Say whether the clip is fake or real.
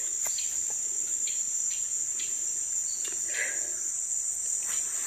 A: real